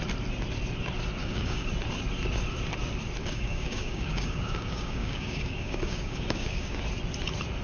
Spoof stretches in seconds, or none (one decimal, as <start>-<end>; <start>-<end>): 1.2-1.7; 3.2-6.8